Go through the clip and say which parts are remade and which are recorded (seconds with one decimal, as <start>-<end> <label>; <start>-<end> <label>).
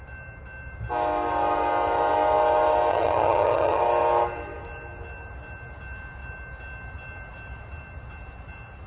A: 0.0-2.9 recorded; 2.9-3.8 remade; 3.8-8.9 recorded